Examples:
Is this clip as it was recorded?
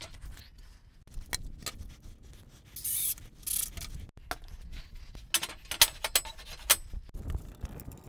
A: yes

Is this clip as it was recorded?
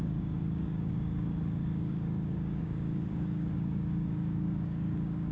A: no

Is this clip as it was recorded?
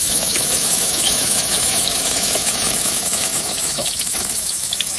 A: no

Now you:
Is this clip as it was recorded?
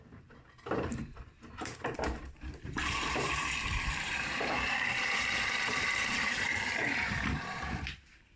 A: no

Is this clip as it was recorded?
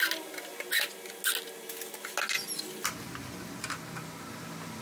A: yes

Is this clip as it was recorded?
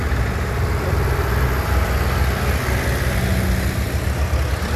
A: yes